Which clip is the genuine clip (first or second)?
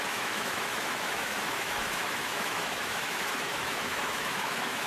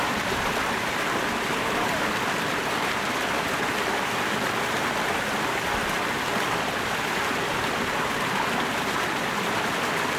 second